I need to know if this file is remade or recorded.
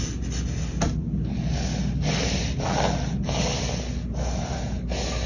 recorded